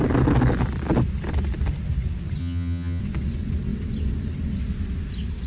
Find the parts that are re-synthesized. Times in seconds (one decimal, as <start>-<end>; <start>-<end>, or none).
2.4-3.0